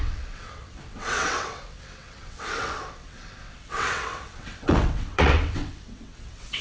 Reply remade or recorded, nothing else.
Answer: remade